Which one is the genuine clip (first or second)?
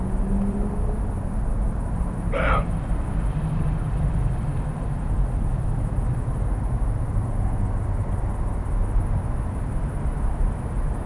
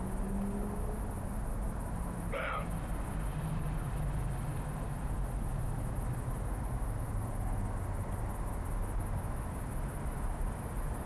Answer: second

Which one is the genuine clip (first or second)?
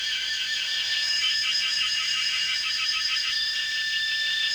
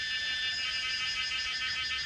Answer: second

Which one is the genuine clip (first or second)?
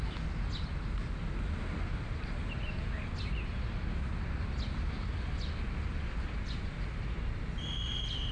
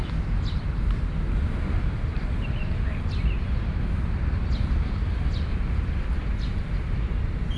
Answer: first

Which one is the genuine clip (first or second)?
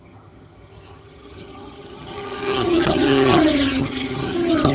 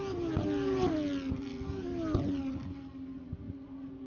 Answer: second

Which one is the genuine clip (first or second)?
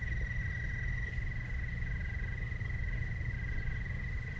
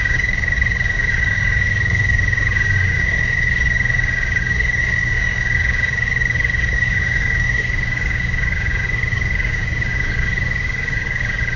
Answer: first